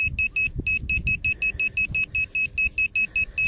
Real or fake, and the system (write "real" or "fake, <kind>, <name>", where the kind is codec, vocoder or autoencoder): real